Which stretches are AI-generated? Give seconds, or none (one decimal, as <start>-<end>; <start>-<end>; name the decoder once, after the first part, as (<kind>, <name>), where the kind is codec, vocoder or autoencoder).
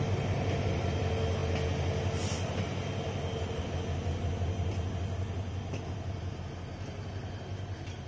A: none